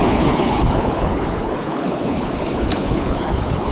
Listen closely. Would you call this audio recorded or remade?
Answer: remade